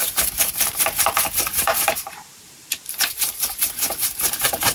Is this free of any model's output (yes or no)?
no